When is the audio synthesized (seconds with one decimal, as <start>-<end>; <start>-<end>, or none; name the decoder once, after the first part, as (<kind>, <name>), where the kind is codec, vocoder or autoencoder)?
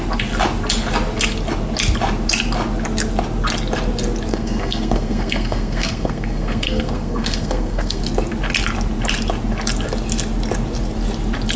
4.3-8.0 (codec, SNAC)